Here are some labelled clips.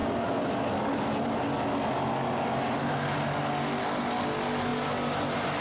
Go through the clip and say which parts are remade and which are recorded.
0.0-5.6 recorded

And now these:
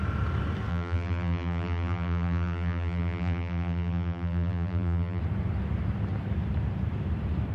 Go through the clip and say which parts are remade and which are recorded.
0.0-0.7 recorded; 0.7-5.2 remade; 5.2-7.5 recorded

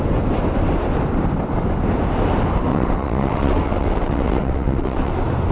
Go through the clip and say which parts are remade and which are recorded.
0.0-2.7 recorded; 2.7-5.1 remade; 5.1-5.5 recorded

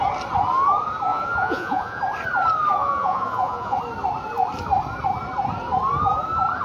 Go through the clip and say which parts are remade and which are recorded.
0.0-1.1 recorded; 1.1-2.0 remade; 2.0-2.8 recorded; 2.8-3.8 remade; 3.8-6.6 recorded

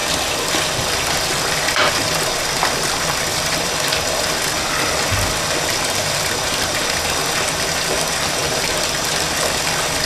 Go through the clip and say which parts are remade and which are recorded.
0.0-1.9 remade; 1.9-3.3 recorded; 3.3-4.2 remade; 4.2-8.4 recorded; 8.4-9.2 remade; 9.2-10.1 recorded

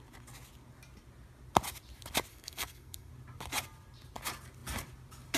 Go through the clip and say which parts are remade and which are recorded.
0.0-2.3 recorded; 2.3-3.1 remade; 3.1-5.4 recorded

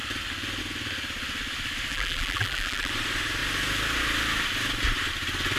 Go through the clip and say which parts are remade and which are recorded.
0.0-1.9 recorded; 1.9-2.9 remade; 2.9-5.6 recorded

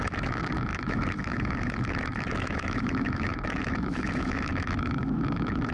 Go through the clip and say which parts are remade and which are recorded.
0.0-5.7 remade